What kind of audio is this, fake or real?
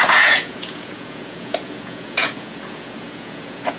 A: fake